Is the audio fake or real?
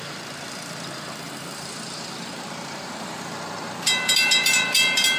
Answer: fake